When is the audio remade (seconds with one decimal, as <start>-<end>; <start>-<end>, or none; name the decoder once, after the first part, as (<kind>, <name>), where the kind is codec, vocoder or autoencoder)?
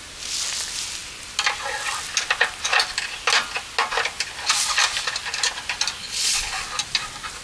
6.0-6.6 (codec, HILCodec)